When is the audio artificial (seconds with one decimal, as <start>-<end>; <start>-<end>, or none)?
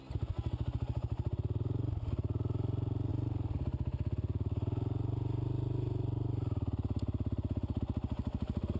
none